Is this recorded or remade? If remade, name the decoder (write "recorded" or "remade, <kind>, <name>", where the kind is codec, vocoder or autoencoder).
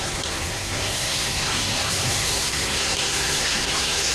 remade, codec, SNAC